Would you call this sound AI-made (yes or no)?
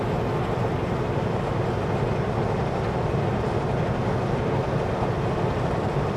no